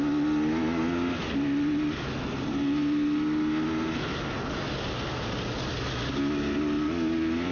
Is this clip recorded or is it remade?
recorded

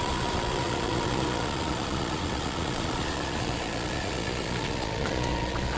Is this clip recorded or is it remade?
remade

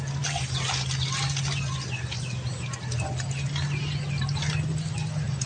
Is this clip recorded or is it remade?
recorded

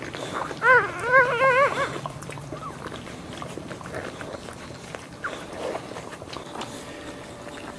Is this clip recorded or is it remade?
recorded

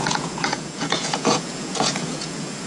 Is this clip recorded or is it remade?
remade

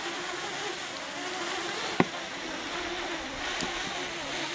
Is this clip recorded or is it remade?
recorded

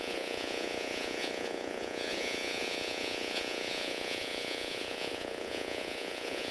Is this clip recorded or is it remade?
remade